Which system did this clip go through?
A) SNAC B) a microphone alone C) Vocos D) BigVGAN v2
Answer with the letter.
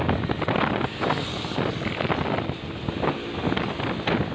B